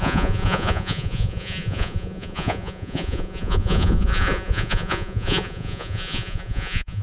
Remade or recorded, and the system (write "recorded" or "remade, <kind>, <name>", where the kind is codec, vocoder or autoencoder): remade, vocoder, Vocos